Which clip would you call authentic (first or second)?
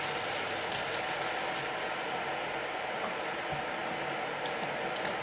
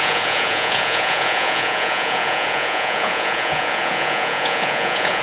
first